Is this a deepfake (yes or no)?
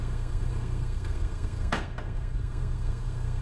yes